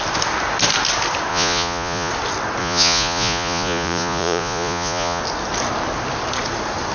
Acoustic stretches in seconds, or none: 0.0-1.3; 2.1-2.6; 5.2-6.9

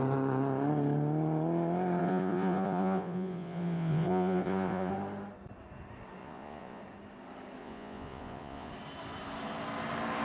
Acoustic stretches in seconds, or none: 0.0-2.0; 4.9-6.2; 6.8-7.6; 8.7-10.2

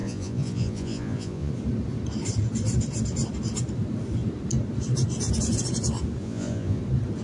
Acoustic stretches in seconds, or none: 1.5-6.2; 6.8-7.2

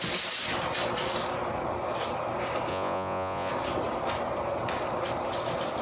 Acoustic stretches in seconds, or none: 0.0-2.7; 3.5-5.8

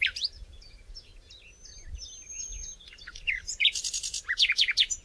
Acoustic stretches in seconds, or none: 1.1-2.4

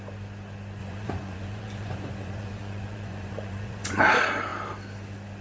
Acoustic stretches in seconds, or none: 0.0-0.8; 4.0-5.4

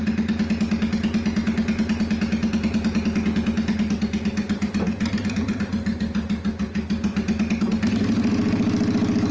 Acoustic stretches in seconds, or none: 0.0-9.3

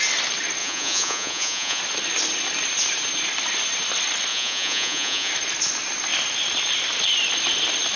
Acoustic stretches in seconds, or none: 0.0-0.6; 1.8-4.3; 5.3-8.0